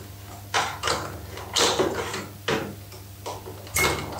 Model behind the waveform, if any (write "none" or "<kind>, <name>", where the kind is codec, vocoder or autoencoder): none